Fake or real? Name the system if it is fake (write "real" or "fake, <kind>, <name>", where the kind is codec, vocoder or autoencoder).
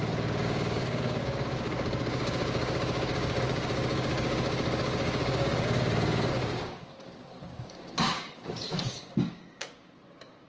fake, codec, DAC